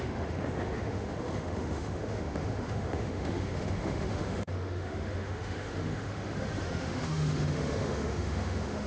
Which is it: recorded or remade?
remade